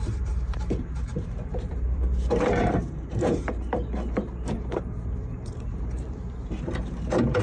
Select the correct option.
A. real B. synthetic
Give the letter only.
B